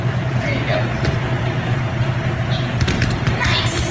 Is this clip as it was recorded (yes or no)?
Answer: yes